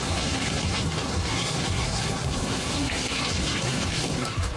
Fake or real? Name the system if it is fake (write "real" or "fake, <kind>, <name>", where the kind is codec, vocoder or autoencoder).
fake, codec, SNAC